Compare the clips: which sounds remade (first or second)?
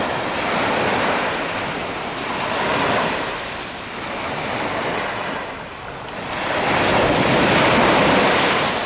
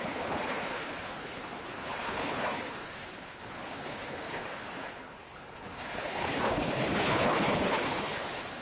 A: second